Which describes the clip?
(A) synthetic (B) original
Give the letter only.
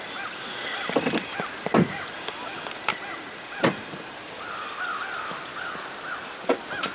B